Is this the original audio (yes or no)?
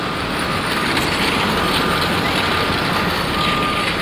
yes